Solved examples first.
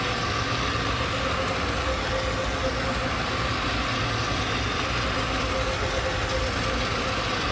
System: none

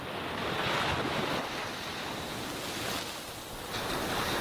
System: none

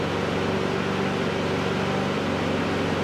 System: none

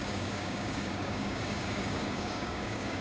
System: codec, DAC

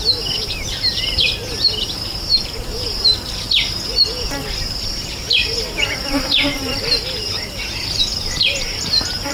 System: vocoder, BigVGAN v2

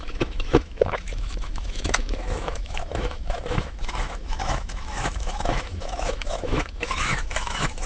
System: autoencoder, DAC-VAE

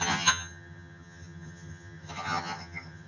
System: vocoder, HiFi-GAN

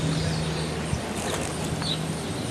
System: none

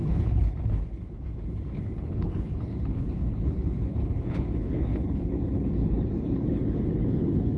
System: codec, HILCodec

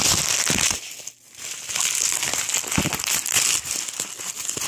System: none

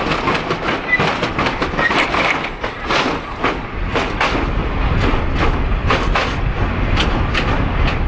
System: none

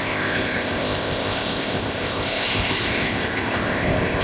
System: codec, ZipCodec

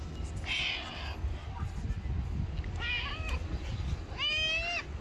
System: none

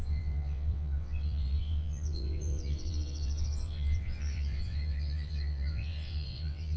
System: vocoder, WaveNeXt